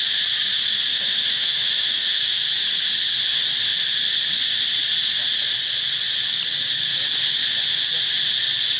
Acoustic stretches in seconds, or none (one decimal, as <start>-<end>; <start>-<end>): 0.0-0.9; 2.4-8.8